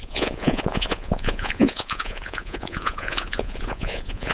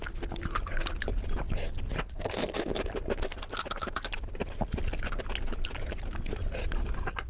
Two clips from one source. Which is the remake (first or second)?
first